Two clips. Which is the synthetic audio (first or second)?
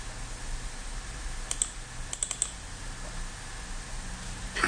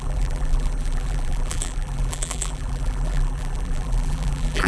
second